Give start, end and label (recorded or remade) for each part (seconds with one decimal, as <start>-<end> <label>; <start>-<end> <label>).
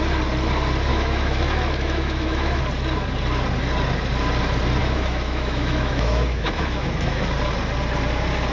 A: 0.0-0.9 recorded; 0.9-2.6 remade; 2.6-4.8 recorded; 4.8-7.2 remade; 7.2-8.5 recorded